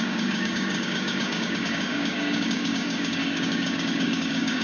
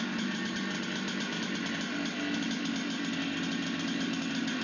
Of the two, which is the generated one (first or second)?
first